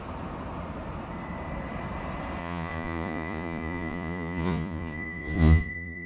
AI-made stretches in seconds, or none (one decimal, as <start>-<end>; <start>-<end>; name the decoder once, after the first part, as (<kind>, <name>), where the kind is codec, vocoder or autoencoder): 2.4-6.1 (vocoder, Vocos)